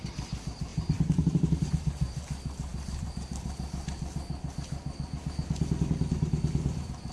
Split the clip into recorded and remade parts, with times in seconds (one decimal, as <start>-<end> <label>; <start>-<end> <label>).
0.0-0.7 recorded; 0.7-2.2 remade; 2.2-7.1 recorded